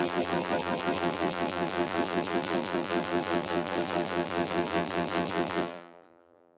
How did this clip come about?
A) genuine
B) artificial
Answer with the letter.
B